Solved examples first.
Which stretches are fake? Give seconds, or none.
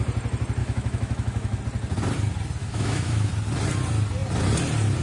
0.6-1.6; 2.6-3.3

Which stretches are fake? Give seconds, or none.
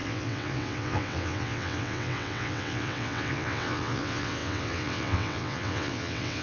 0.0-6.4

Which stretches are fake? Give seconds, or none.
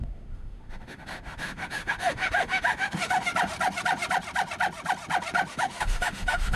0.0-3.3; 5.5-6.6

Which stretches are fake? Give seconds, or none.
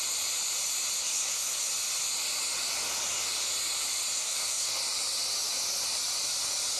1.0-1.7; 4.1-4.7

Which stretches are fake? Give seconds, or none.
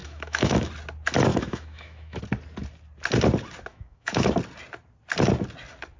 0.0-0.7; 1.3-2.2; 3.7-4.3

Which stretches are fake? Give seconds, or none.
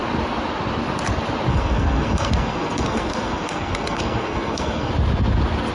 1.5-4.9